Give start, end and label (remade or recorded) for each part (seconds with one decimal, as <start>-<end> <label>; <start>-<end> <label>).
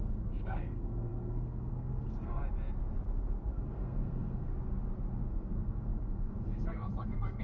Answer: 0.0-2.4 remade; 2.4-3.5 recorded; 3.5-4.5 remade; 4.5-5.3 recorded; 5.3-7.4 remade